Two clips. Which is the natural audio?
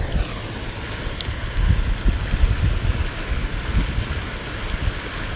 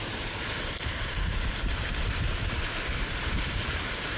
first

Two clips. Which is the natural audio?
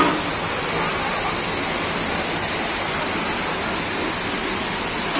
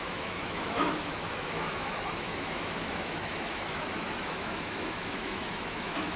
first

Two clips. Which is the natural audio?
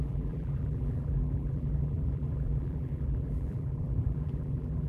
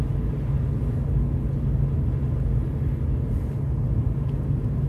second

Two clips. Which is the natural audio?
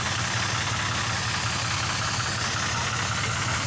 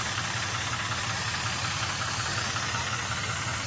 first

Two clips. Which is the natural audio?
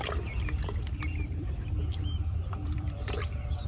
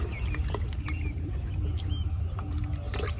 second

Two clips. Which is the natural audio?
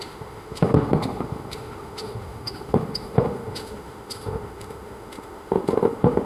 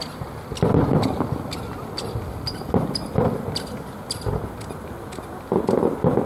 second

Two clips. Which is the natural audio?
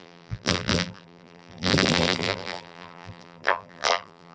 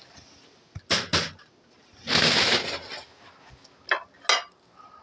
second